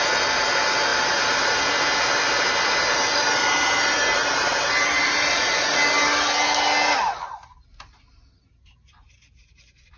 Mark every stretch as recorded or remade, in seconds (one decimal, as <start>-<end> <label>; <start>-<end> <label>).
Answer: 0.0-10.0 recorded